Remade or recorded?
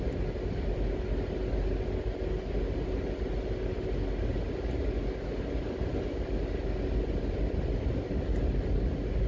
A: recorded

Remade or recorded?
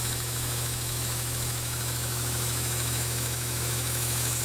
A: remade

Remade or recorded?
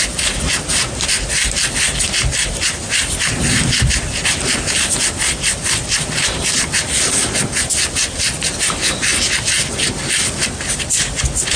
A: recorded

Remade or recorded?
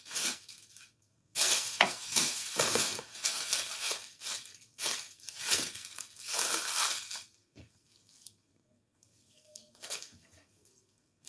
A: remade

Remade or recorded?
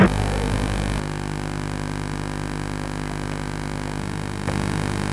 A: recorded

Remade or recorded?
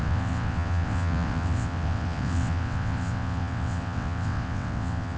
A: remade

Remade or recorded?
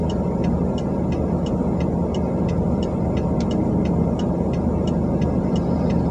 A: recorded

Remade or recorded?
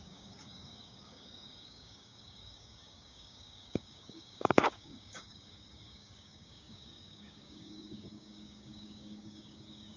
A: remade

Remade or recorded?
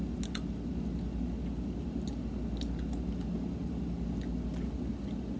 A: recorded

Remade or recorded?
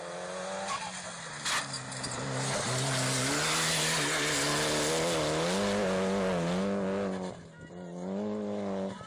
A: recorded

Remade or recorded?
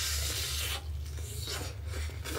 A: recorded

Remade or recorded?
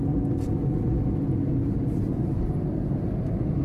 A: recorded